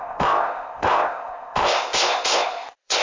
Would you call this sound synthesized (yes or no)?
yes